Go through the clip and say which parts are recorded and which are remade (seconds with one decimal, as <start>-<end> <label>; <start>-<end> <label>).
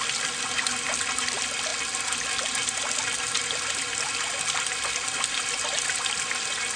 0.0-6.8 recorded